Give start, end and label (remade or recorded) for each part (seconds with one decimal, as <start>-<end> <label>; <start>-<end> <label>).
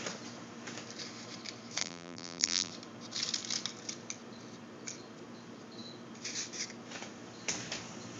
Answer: 0.0-1.8 recorded; 1.8-2.7 remade; 2.7-8.2 recorded